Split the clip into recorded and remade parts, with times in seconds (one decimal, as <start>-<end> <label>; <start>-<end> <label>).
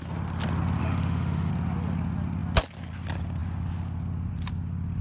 0.0-0.8 recorded; 0.8-1.5 remade; 1.5-5.0 recorded